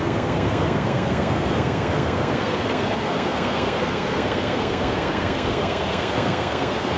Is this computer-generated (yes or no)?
yes